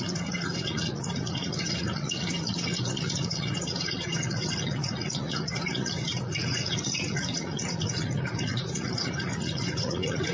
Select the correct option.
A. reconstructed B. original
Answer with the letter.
A